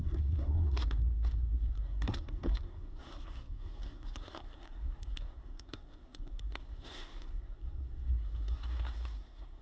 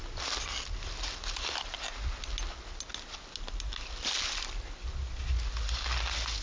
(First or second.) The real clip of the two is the second